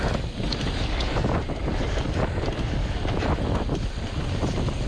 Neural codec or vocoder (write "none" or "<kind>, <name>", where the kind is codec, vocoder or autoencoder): none